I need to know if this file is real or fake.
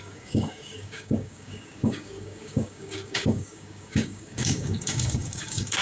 fake